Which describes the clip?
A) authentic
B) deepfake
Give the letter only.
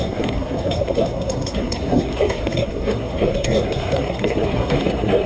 B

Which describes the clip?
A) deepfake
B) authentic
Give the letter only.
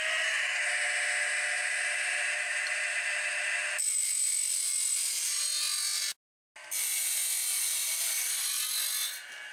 B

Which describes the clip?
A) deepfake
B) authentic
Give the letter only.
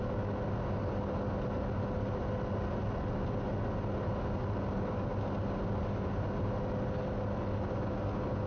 B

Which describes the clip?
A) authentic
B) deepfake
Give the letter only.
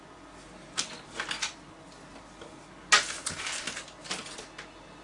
A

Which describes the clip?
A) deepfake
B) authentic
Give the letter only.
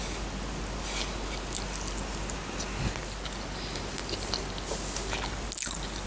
B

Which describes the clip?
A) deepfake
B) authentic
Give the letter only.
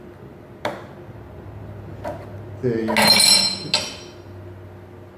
B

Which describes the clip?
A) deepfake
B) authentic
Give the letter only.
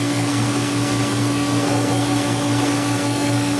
A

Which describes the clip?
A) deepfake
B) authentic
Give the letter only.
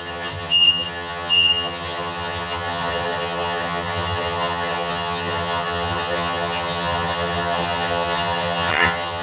A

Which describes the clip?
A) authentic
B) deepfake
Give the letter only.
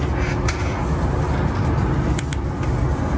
A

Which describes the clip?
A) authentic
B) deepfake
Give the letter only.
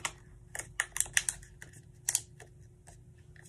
A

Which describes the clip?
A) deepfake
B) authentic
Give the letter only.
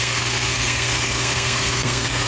A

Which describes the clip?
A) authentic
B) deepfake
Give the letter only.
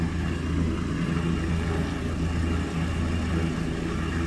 A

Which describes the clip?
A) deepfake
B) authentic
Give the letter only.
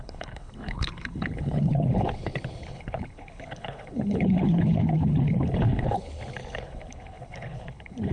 A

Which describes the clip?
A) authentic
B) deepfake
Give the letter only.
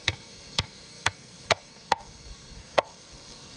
B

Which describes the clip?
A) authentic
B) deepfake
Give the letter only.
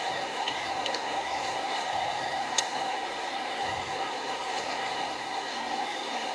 B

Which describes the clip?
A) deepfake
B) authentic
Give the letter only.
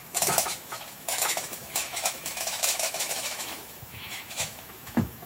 A